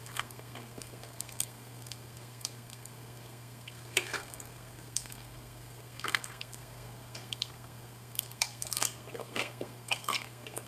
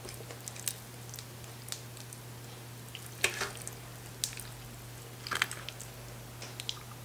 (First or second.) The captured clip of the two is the second